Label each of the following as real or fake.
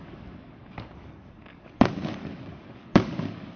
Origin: fake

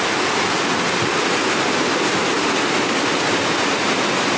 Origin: real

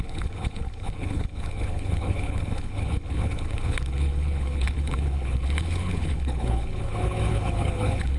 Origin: fake